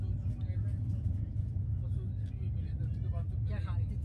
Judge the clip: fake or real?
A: real